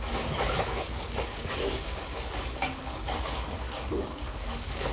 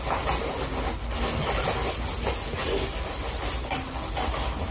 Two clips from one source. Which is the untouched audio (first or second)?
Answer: second